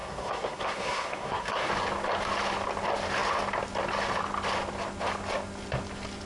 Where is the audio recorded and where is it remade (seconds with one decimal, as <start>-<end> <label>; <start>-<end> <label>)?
0.0-1.7 remade; 1.7-6.3 recorded